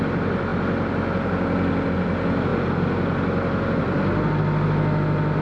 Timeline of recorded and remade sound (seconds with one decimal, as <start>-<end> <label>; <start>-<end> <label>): 0.0-5.4 recorded